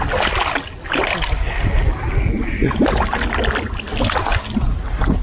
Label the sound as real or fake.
real